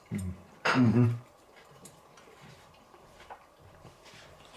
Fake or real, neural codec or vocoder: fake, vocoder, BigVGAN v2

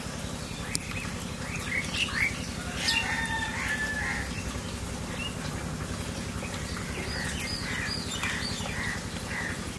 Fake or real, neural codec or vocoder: real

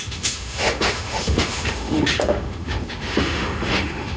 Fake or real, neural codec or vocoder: fake, autoencoder, DAC-VAE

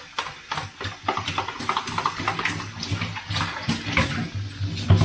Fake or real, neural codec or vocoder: real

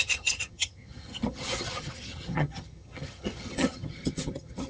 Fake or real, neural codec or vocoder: fake, vocoder, HiFi-GAN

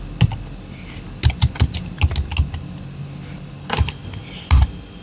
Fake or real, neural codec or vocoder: real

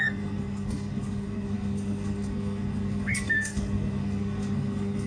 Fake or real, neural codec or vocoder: fake, codec, SNAC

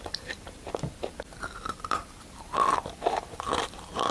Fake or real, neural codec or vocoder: fake, vocoder, BigVGAN v2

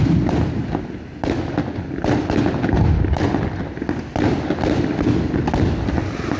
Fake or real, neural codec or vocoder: real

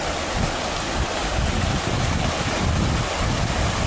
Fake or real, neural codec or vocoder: real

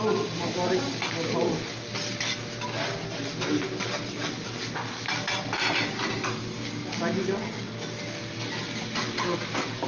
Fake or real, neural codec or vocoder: real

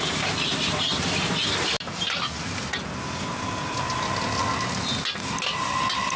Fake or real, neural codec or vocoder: real